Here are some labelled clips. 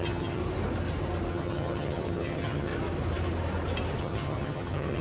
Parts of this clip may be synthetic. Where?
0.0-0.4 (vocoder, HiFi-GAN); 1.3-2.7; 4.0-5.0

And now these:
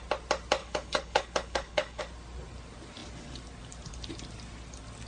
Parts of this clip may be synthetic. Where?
0.6-2.0 (codec, HILCodec)

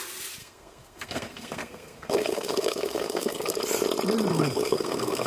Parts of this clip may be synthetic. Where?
0.4-3.6 (codec, SNAC); 4.3-5.3

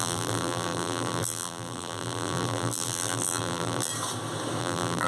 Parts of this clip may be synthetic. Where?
0.0-3.9 (vocoder, BigVGAN v2); 4.6-5.1

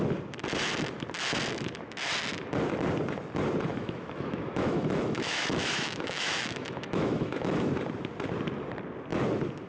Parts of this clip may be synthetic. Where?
3.7-7.7 (autoencoder, DAC-VAE)

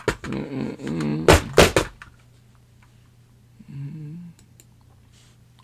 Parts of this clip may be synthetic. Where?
none

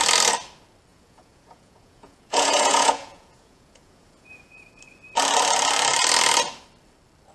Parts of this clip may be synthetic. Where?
0.9-4.8 (vocoder, Vocos)

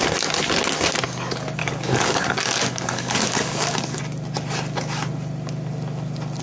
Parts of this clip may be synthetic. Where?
1.6-4.0 (codec, DAC)